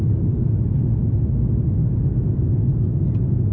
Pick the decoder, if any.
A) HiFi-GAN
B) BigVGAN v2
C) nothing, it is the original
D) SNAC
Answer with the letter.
C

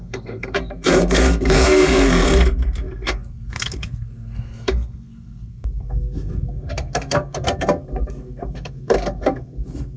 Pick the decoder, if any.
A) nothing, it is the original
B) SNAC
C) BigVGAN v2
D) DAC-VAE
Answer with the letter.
B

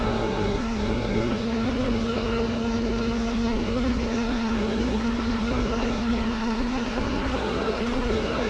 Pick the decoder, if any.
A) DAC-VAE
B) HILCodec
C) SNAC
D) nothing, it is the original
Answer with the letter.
C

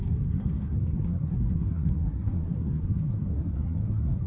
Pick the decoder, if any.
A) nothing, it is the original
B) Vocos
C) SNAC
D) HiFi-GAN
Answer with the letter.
C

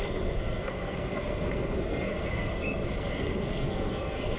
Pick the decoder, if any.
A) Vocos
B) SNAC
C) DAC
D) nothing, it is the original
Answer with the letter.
B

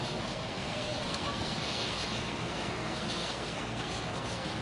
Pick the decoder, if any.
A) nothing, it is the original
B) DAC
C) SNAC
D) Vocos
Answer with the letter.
C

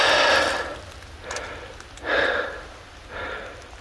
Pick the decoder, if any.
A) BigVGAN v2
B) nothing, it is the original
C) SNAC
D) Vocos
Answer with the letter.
B